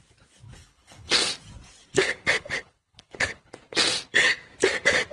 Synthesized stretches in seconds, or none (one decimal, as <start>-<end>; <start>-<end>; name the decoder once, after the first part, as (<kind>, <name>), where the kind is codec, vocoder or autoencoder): 0.6-1.3 (codec, HILCodec); 1.9-3.5